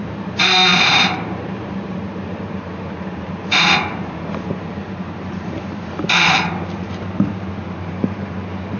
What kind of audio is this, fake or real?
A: fake